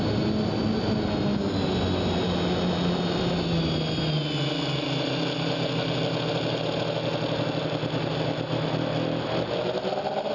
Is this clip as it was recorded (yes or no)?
yes